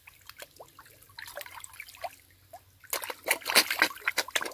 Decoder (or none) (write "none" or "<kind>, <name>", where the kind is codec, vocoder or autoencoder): none